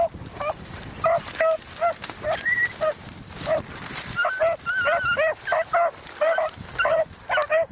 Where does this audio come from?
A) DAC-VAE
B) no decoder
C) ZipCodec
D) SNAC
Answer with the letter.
B